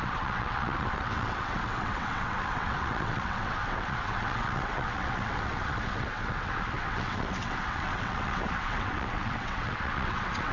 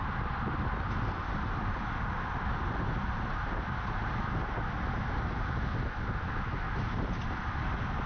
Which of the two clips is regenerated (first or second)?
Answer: first